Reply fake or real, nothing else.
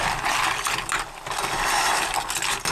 real